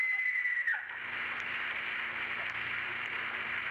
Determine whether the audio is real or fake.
real